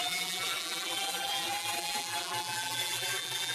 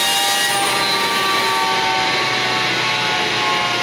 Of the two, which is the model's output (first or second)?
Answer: first